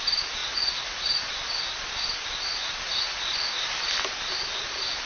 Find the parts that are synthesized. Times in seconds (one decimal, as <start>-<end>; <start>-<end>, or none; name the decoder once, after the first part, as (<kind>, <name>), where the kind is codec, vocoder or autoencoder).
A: 0.4-1.3 (vocoder, Vocos); 2.5-3.2